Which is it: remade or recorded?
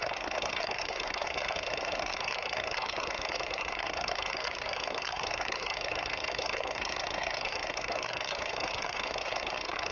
remade